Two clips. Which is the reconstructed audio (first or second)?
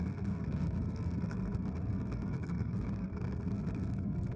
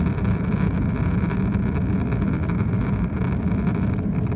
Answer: first